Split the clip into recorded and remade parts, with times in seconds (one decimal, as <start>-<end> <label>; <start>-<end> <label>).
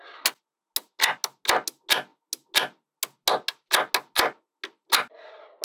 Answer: 0.0-5.6 recorded